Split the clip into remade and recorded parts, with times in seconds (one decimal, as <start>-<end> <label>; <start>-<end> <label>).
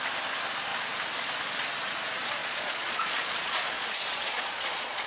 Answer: 0.0-2.4 recorded; 2.4-5.1 remade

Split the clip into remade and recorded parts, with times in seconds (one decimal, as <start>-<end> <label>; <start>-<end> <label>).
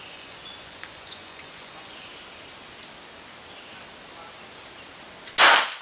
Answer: 0.0-2.1 remade; 2.1-5.8 recorded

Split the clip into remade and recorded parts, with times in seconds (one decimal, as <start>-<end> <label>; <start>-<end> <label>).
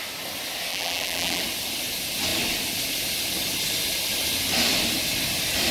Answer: 0.0-0.7 recorded; 0.7-1.4 remade; 1.4-5.7 recorded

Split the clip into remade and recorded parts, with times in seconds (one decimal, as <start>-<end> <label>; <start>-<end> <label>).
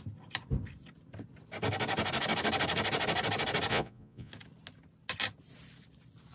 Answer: 0.0-3.7 recorded; 3.7-4.3 remade; 4.3-6.3 recorded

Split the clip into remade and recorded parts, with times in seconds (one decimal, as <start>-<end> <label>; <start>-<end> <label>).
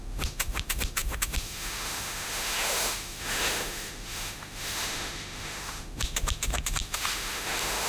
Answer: 0.0-7.9 remade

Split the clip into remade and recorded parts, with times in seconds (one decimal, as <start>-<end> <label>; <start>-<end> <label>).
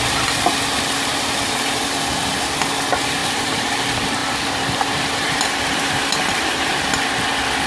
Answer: 0.0-3.2 recorded; 3.2-3.7 remade; 3.7-4.2 recorded; 4.2-6.7 remade; 6.7-7.7 recorded